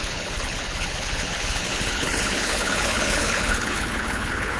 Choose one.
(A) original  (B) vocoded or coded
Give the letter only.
B